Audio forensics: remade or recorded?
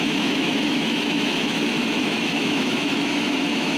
remade